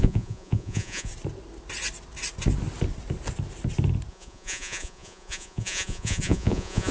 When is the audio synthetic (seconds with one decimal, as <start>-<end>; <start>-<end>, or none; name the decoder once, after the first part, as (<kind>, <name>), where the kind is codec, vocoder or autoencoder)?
0.0-1.1 (vocoder, Vocos); 4.1-6.9

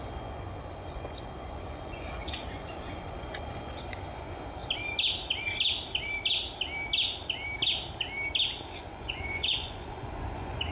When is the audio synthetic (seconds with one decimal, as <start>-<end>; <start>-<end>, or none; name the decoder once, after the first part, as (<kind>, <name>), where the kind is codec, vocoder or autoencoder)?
0.0-4.6 (vocoder, Vocos); 8.7-10.7

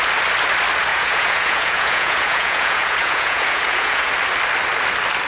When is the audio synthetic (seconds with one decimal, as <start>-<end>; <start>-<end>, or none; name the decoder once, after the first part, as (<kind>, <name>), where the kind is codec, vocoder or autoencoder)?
0.9-4.1 (vocoder, Vocos)

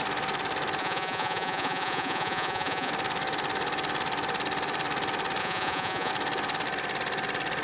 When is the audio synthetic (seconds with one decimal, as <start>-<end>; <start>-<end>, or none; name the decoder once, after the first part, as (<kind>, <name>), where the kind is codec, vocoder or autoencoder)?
0.8-2.9 (vocoder, Vocos); 5.4-6.1